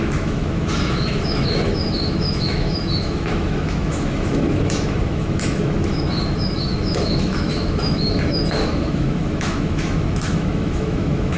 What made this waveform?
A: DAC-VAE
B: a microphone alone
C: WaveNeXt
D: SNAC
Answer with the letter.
A